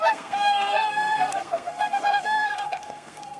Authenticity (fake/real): fake